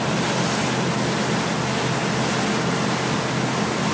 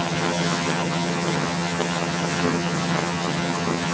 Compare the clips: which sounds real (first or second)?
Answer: first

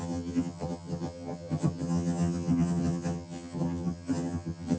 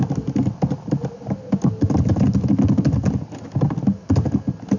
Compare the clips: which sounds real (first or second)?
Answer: second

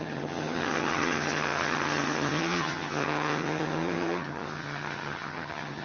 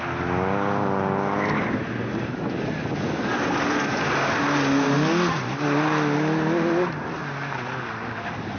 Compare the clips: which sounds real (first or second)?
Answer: second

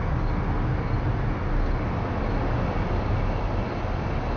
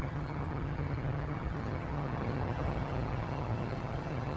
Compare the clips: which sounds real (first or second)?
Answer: first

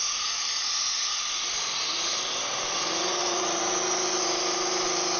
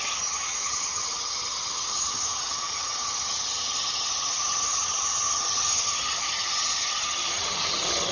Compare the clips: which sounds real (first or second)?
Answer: first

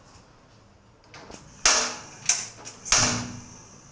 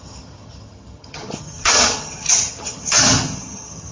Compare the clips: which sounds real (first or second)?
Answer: first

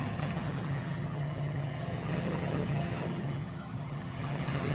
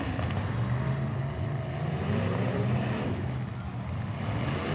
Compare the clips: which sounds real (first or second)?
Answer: second